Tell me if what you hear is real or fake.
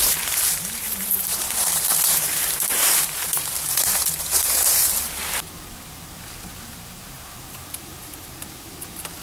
fake